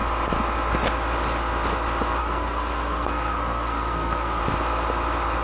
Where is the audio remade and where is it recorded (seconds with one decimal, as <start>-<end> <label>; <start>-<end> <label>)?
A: 0.0-2.2 recorded; 2.2-4.4 remade; 4.4-5.4 recorded